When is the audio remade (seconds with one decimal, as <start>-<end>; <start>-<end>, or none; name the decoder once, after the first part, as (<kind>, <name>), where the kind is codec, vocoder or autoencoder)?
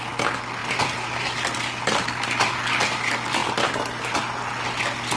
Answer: none